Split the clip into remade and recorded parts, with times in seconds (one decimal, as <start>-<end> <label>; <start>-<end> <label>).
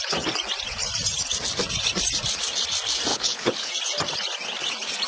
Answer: 0.0-3.1 recorded; 3.1-3.7 remade; 3.7-5.1 recorded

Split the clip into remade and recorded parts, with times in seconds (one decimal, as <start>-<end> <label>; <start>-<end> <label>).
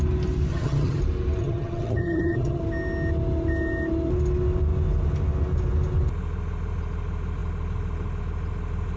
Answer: 0.0-0.5 recorded; 0.5-1.0 remade; 1.0-1.4 recorded; 1.4-2.6 remade; 2.6-9.0 recorded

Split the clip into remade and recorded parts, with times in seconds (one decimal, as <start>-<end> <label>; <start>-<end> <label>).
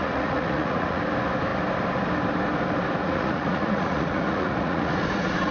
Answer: 0.0-1.0 remade; 1.0-3.0 recorded; 3.0-5.5 remade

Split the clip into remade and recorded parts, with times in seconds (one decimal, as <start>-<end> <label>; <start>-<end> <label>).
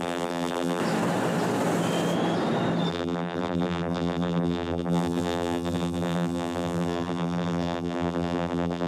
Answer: 0.0-0.8 remade; 0.8-2.9 recorded; 2.9-8.9 remade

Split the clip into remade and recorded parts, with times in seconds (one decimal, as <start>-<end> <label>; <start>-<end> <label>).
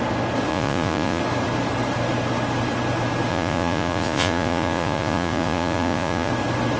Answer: 0.0-0.5 recorded; 0.5-1.2 remade; 1.2-3.3 recorded; 3.3-6.3 remade; 6.3-6.8 recorded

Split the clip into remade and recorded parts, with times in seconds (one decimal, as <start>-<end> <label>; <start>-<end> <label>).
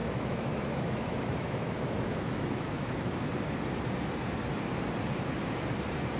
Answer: 0.0-3.3 remade; 3.3-6.2 recorded